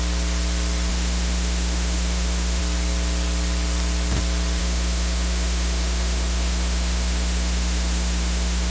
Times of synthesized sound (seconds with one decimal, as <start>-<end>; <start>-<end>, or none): 0.9-2.6; 4.6-8.7